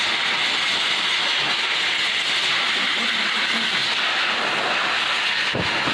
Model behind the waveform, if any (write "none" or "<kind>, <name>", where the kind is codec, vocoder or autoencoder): none